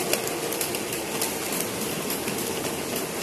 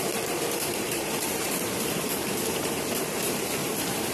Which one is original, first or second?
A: first